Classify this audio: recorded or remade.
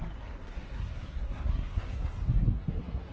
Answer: remade